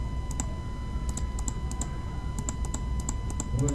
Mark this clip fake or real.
real